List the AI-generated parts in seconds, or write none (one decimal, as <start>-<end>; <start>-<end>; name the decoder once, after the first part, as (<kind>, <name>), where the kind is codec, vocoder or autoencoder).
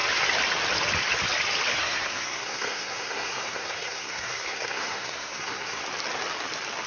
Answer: 1.8-5.8 (codec, SNAC)